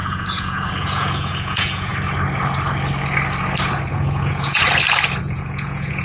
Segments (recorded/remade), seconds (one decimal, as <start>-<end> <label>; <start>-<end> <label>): 0.0-1.9 remade; 1.9-3.9 recorded; 3.9-4.6 remade; 4.6-5.2 recorded; 5.2-6.0 remade

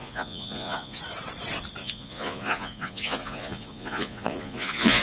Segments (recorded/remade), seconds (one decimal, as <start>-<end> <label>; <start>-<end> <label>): 0.0-1.0 remade; 1.0-1.8 recorded; 1.8-5.0 remade

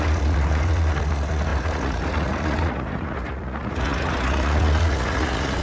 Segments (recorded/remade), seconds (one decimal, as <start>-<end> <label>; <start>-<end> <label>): 0.0-5.6 remade

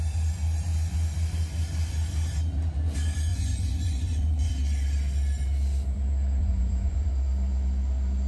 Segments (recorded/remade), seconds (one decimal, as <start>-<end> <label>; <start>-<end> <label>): 0.0-3.3 recorded; 3.3-4.5 remade; 4.5-6.4 recorded; 6.4-7.1 remade; 7.1-8.3 recorded

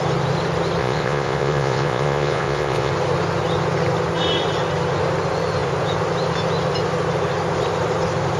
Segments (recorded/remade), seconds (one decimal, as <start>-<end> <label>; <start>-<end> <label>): 0.0-0.8 recorded; 0.8-2.9 remade; 2.9-8.4 recorded

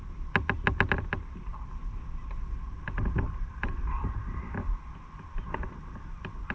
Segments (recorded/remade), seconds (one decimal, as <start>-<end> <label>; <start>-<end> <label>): 0.0-6.5 recorded

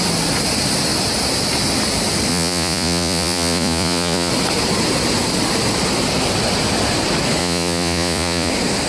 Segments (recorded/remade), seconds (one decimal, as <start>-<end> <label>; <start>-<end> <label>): 0.0-2.3 recorded; 2.3-4.3 remade; 4.3-7.4 recorded; 7.4-8.5 remade; 8.5-8.9 recorded